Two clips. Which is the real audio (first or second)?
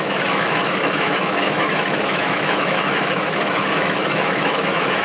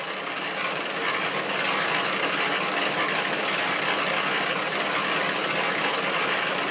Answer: second